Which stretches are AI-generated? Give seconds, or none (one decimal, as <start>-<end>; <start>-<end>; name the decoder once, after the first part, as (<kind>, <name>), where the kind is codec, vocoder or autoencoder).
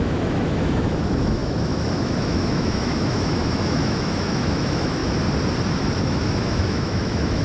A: 0.0-5.0 (autoencoder, DAC-VAE); 6.0-7.4